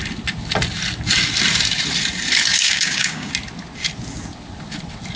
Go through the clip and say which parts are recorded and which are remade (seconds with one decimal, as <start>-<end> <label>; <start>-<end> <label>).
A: 0.0-2.5 recorded; 2.5-3.3 remade; 3.3-5.2 recorded